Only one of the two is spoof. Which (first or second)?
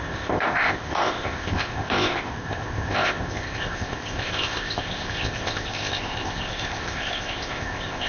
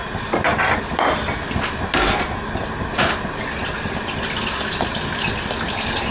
first